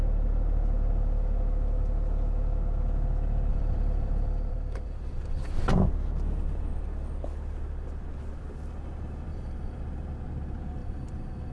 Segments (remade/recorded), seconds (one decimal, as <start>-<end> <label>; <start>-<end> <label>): 0.0-3.5 recorded; 3.5-5.7 remade; 5.7-9.3 recorded; 9.3-9.8 remade; 9.8-10.8 recorded; 10.8-11.5 remade